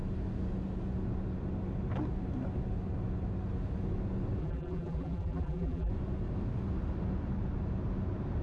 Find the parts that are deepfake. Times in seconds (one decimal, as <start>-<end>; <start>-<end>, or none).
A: 4.4-5.9